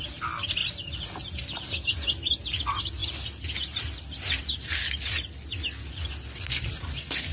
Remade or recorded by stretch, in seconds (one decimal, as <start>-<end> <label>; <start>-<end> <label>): 0.0-7.3 recorded